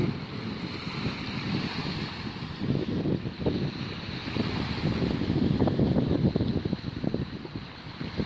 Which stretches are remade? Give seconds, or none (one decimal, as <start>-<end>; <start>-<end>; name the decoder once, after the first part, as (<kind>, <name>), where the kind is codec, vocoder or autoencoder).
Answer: none